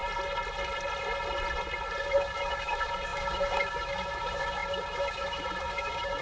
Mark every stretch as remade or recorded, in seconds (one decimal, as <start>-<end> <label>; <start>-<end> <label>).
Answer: 0.0-2.0 recorded; 2.0-6.2 remade